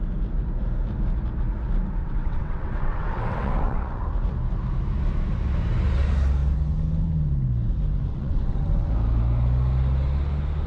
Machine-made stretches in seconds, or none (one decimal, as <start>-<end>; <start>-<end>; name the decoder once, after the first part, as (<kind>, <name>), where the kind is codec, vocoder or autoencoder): 2.0-4.0 (vocoder, WaveNeXt); 8.1-8.9